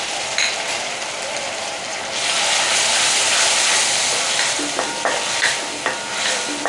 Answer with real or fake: real